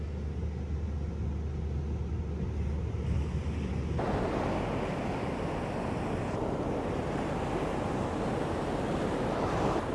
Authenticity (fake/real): real